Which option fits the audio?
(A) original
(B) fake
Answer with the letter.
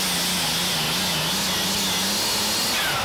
A